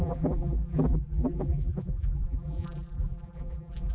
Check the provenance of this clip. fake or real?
fake